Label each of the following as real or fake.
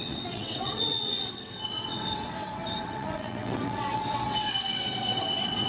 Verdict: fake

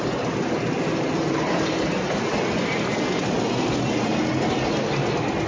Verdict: real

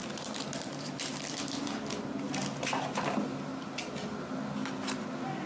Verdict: real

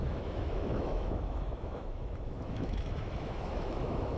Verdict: fake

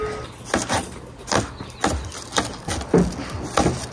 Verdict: real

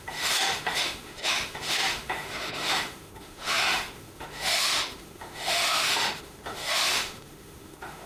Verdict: fake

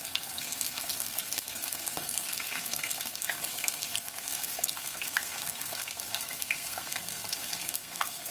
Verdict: fake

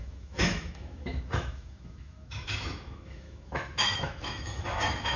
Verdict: fake